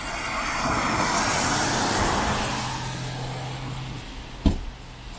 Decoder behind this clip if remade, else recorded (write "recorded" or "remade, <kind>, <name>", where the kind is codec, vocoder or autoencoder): recorded